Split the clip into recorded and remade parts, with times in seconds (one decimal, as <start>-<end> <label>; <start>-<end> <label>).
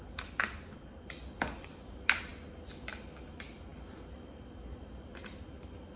0.0-6.0 recorded